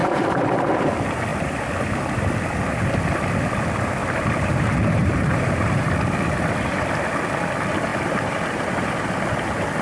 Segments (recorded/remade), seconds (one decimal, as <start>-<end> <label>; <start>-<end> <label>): 0.0-0.6 remade; 0.6-4.0 recorded; 4.0-5.9 remade; 5.9-7.9 recorded; 7.9-9.1 remade; 9.1-9.8 recorded